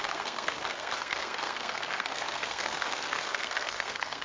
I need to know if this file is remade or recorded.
remade